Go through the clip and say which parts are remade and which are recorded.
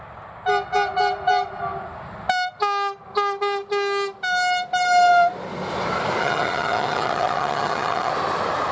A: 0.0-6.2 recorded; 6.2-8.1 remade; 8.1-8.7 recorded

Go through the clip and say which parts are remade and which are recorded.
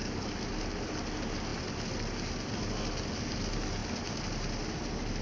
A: 0.0-5.2 recorded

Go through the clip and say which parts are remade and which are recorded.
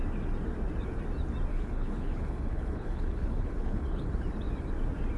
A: 0.0-1.5 recorded; 1.5-4.1 remade; 4.1-5.2 recorded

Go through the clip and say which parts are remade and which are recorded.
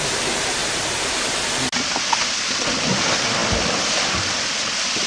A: 0.0-5.1 recorded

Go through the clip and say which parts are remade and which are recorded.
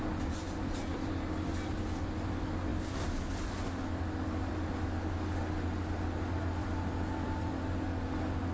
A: 0.0-0.9 recorded; 0.9-1.7 remade; 1.7-6.6 recorded; 6.6-7.5 remade; 7.5-8.5 recorded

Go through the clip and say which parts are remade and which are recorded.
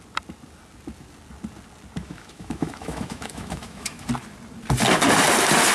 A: 0.0-2.0 recorded; 2.0-4.1 remade; 4.1-5.7 recorded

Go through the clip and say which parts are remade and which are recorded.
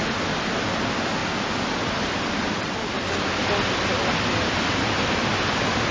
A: 0.0-5.9 recorded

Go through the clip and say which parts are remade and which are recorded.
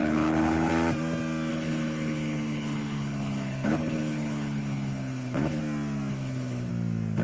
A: 0.0-0.7 remade; 0.7-1.5 recorded; 1.5-5.6 remade; 5.6-6.1 recorded; 6.1-6.7 remade; 6.7-7.2 recorded